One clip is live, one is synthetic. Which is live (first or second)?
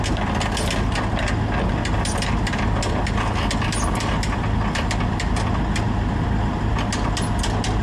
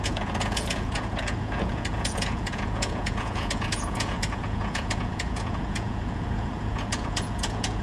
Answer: first